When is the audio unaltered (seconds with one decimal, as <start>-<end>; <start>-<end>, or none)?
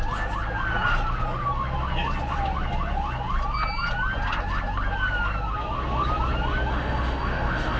0.0-6.7